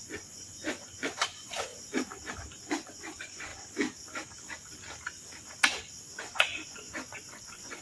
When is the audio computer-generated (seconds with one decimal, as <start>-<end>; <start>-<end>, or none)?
0.0-1.7; 2.7-3.5; 6.2-7.8